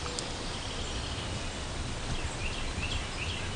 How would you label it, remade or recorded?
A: recorded